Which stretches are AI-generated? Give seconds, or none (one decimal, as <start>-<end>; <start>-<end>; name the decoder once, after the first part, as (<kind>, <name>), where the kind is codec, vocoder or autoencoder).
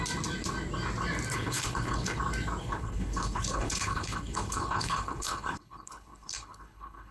1.3-2.2 (codec, HILCodec); 2.6-7.1